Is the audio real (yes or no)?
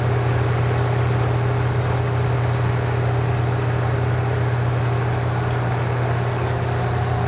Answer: yes